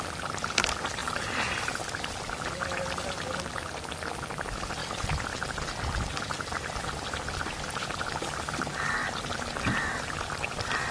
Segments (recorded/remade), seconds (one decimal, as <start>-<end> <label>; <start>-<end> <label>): 0.0-4.8 remade; 4.8-8.0 recorded; 8.0-10.9 remade